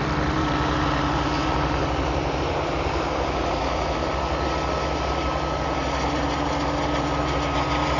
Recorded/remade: recorded